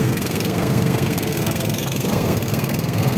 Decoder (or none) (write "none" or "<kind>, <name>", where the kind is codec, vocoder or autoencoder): codec, SNAC